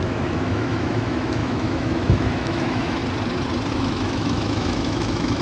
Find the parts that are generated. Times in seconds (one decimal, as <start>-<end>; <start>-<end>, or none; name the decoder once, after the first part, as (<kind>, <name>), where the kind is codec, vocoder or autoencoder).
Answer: 0.0-3.0 (autoencoder, DAC-VAE); 3.7-5.4